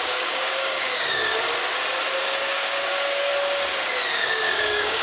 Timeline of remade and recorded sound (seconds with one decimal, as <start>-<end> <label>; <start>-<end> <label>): 0.0-1.2 remade; 1.2-2.2 recorded; 2.2-3.3 remade; 3.3-4.1 recorded; 4.1-5.0 remade